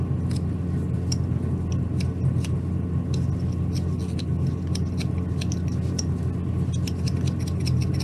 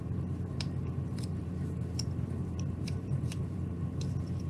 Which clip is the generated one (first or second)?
second